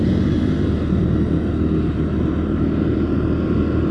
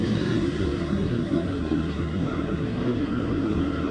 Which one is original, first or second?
first